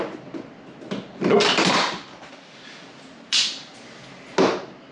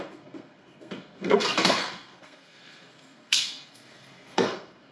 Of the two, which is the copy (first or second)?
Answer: second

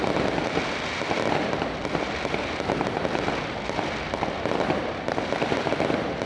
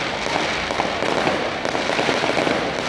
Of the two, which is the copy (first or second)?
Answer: first